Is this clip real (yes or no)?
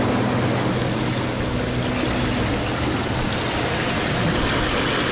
yes